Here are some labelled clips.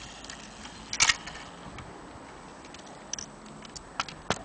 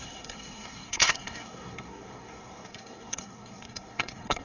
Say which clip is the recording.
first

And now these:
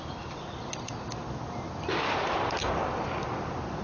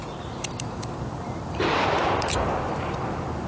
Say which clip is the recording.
first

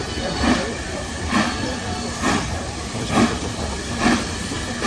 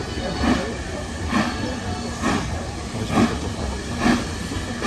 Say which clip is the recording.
second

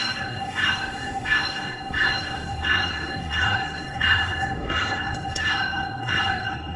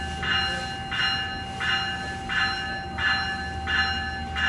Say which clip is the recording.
second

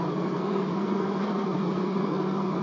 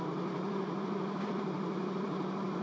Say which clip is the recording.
second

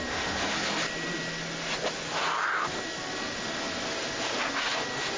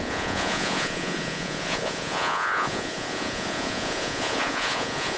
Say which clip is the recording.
first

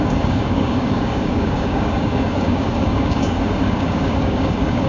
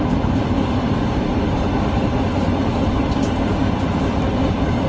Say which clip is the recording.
second